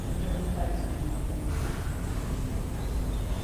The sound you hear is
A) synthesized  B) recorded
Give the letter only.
B